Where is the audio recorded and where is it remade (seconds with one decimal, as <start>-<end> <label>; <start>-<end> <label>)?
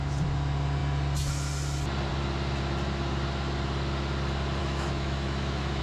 0.0-4.6 recorded; 4.6-5.8 remade